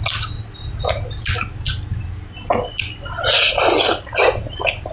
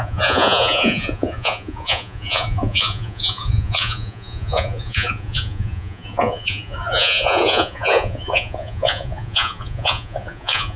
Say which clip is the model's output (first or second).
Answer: second